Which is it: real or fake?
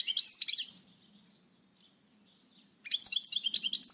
real